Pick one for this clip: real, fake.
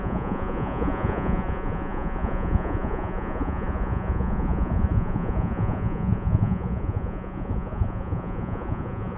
fake